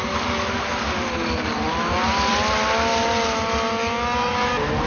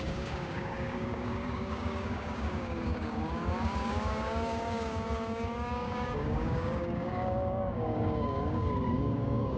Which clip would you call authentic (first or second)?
first